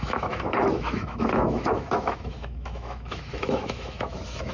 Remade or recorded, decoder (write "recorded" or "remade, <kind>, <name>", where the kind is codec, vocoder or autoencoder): remade, autoencoder, DAC-VAE